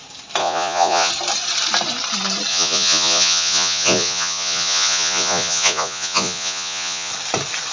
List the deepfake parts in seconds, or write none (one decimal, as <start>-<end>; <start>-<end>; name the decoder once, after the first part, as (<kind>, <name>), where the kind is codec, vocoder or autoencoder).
0.4-1.1 (vocoder, Vocos); 2.5-7.1

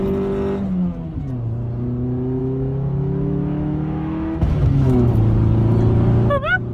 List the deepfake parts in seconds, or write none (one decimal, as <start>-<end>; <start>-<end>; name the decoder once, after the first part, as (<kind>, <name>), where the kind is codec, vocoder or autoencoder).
2.4-5.2 (autoencoder, DAC-VAE)